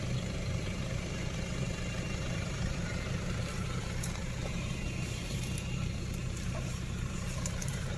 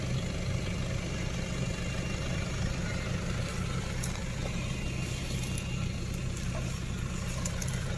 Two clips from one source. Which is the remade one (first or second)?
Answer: first